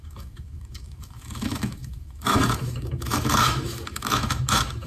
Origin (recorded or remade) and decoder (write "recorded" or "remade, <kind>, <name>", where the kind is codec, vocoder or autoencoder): remade, autoencoder, DAC-VAE